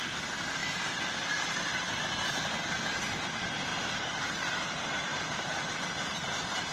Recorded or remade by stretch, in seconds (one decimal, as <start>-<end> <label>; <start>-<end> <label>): 0.0-0.6 recorded; 0.6-2.0 remade; 2.0-3.7 recorded; 3.7-4.5 remade; 4.5-5.1 recorded; 5.1-5.9 remade; 5.9-6.7 recorded